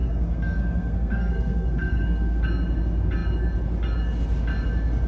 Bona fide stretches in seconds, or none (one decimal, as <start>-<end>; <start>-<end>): 2.4-5.1